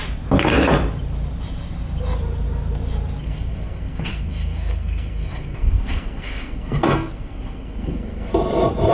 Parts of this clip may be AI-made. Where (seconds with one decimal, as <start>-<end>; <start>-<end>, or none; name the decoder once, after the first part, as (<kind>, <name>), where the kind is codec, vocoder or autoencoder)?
3.2-8.3 (codec, SNAC)

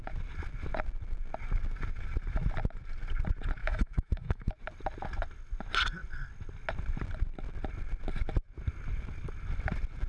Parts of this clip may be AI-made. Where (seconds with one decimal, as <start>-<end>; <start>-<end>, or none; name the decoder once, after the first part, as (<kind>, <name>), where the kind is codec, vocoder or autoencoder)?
3.6-4.5 (autoencoder, DAC-VAE)